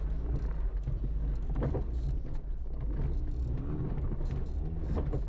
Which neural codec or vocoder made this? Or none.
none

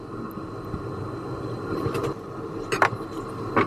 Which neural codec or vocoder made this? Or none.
none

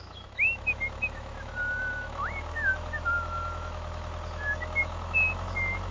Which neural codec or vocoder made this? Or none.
autoencoder, DAC-VAE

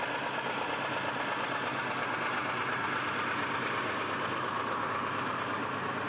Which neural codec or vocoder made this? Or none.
none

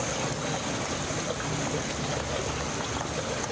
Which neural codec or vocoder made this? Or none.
none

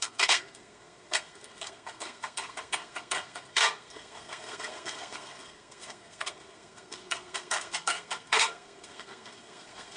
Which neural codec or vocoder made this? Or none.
codec, SNAC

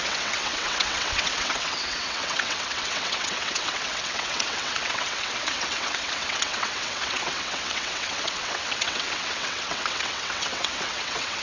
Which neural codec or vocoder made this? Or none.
vocoder, WaveNeXt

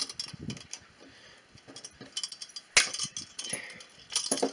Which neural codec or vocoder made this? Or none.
none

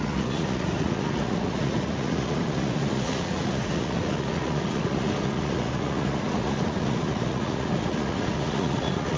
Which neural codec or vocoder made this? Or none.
vocoder, Vocos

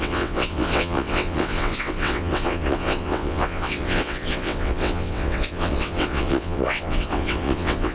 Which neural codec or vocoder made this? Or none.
vocoder, WaveNeXt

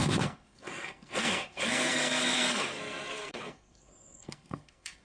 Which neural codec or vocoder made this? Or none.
codec, SNAC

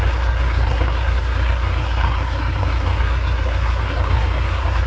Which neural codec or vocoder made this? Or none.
codec, SNAC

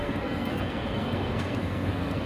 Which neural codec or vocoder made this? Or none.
codec, SNAC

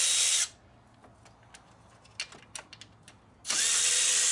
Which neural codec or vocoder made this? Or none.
none